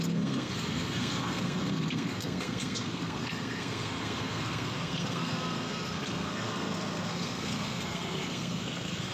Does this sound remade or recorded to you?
remade